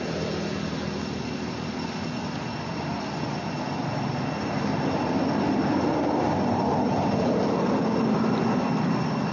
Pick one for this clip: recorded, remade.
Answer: recorded